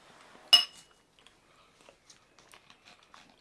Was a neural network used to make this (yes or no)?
no